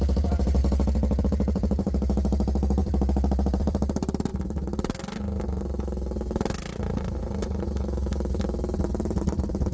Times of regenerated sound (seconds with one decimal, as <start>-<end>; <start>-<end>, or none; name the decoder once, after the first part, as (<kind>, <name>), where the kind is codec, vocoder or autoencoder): 0.0-0.6 (vocoder, BigVGAN v2); 1.2-4.3; 6.9-9.7